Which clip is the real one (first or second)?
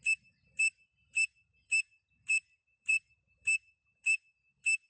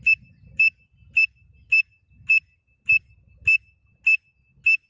second